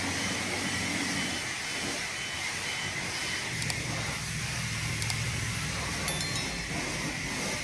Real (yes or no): yes